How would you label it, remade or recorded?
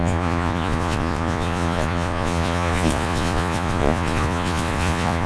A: remade